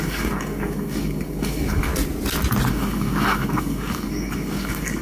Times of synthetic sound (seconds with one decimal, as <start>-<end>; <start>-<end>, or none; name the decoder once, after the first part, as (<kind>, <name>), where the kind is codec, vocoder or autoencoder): 0.0-1.9 (codec, DAC); 2.7-5.0